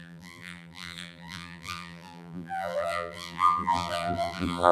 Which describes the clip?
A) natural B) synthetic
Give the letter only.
B